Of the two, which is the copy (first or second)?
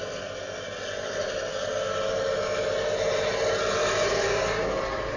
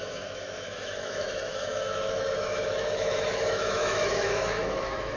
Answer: second